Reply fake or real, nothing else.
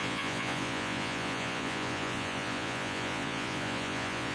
fake